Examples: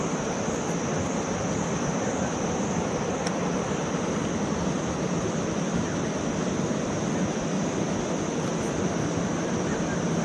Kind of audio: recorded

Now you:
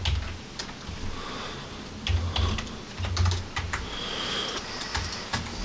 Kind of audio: recorded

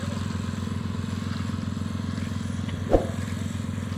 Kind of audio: recorded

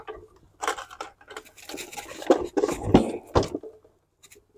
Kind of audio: recorded